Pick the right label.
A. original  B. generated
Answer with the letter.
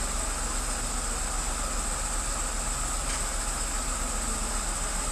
A